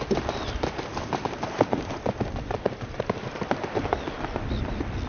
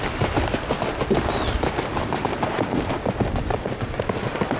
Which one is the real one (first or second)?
second